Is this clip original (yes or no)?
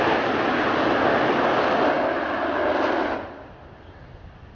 yes